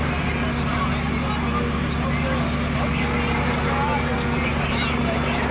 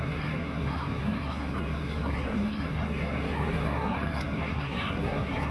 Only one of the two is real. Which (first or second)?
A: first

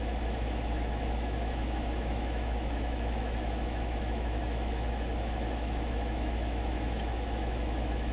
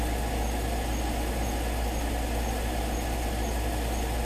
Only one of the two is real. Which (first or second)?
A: second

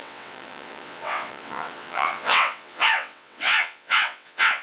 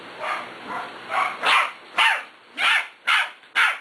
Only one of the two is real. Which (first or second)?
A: second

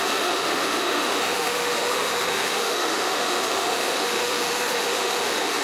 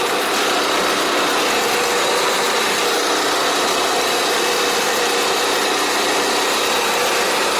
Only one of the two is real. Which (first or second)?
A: second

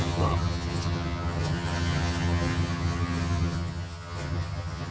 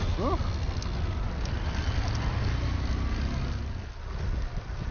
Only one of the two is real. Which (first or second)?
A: second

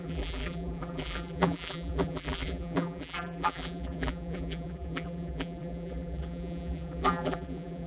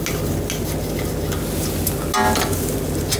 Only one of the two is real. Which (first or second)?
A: second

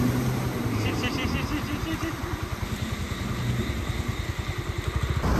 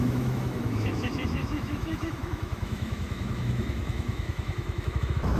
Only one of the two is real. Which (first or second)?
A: first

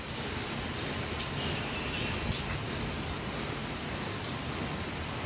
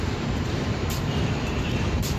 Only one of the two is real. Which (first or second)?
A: first